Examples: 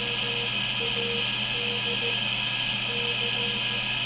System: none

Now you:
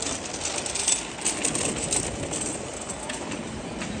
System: none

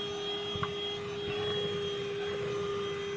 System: none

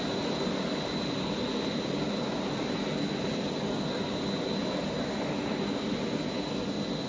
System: none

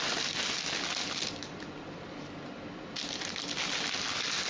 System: none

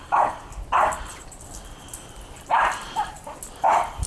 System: none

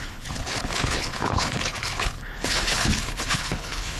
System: codec, HILCodec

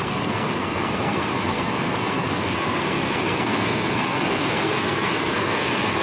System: codec, SNAC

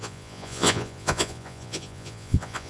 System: vocoder, Vocos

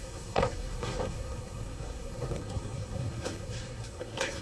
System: codec, SNAC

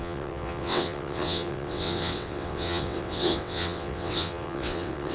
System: vocoder, WaveNeXt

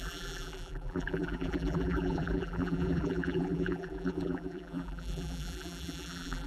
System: vocoder, BigVGAN v2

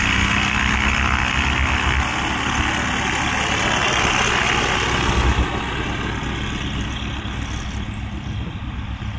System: none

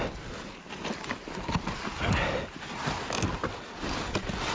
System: none